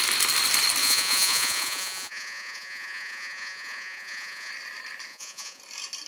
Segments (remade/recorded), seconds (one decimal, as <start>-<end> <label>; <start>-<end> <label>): 0.0-0.8 recorded; 0.8-4.5 remade; 4.5-5.1 recorded; 5.1-5.6 remade; 5.6-6.1 recorded